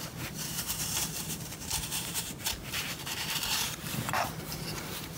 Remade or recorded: remade